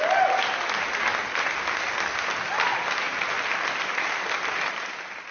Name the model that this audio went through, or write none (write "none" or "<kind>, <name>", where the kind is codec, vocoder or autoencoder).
none